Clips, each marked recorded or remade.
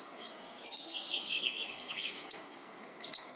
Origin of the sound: remade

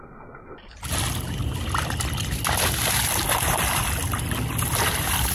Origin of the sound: recorded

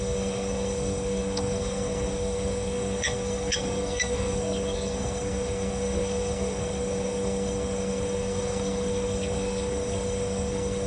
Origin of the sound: remade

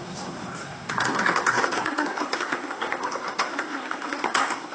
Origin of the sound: remade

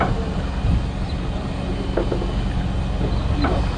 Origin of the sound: recorded